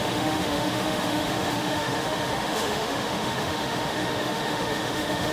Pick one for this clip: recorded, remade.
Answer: remade